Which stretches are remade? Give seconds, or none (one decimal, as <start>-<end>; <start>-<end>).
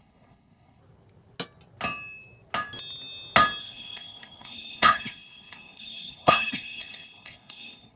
0.0-0.8; 3.6-8.0